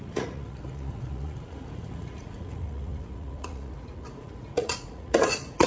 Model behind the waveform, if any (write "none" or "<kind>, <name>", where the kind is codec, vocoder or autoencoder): vocoder, Vocos